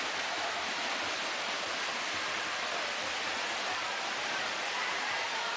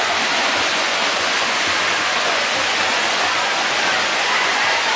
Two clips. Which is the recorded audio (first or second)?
first